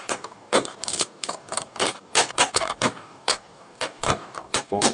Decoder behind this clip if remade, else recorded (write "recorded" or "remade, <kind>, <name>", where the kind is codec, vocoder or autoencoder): remade, codec, DAC